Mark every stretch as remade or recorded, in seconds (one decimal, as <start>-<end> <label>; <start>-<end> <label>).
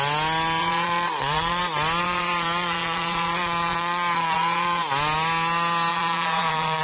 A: 0.0-0.6 recorded; 0.6-1.6 remade; 1.6-2.0 recorded; 2.0-4.8 remade; 4.8-5.9 recorded; 5.9-6.8 remade